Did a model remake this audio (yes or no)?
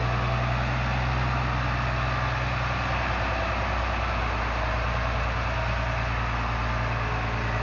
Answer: no